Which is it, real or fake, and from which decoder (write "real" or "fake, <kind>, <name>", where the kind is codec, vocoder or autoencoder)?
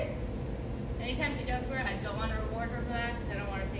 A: real